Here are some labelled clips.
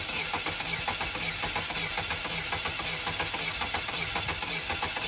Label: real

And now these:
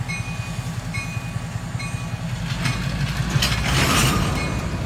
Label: real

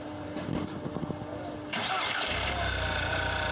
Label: real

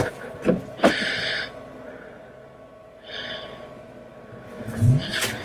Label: real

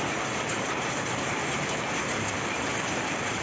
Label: fake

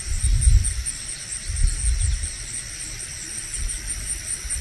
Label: real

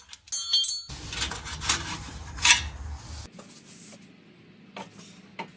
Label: real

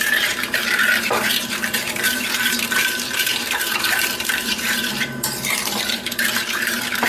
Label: fake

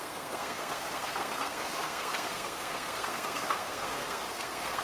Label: fake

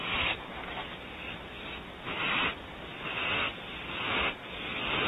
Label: real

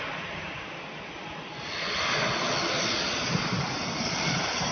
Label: real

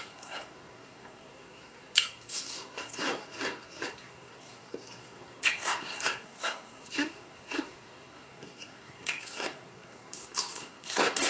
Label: fake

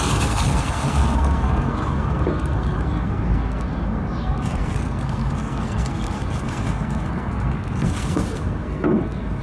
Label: fake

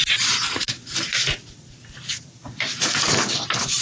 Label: real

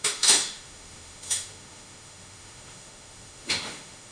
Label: fake